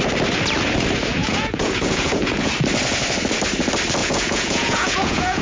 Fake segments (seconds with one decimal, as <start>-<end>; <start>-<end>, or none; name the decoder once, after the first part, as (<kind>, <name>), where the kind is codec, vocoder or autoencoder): 1.2-2.5 (vocoder, Vocos); 4.0-5.4